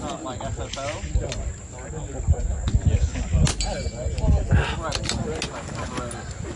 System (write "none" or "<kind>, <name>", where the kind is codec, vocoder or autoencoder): none